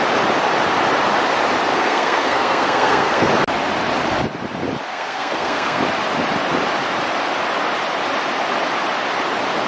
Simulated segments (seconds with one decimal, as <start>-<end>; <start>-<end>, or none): 1.7-3.3; 4.9-5.8